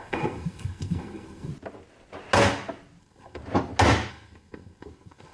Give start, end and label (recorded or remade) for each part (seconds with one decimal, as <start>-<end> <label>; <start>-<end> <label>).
0.0-1.5 remade; 1.5-3.0 recorded; 3.0-3.4 remade; 3.4-4.1 recorded; 4.1-5.3 remade